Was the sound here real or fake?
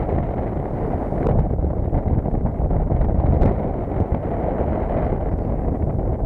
real